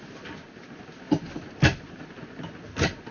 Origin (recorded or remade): recorded